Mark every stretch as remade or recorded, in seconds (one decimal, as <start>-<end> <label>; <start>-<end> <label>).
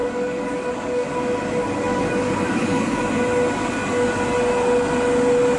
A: 0.0-1.1 remade; 1.1-1.6 recorded; 1.6-3.0 remade; 3.0-5.6 recorded